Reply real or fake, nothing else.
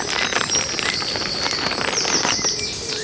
real